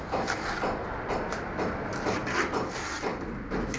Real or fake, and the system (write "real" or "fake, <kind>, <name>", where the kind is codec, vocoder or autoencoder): real